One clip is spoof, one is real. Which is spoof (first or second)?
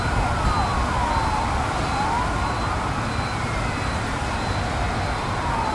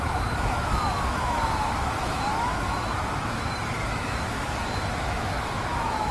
second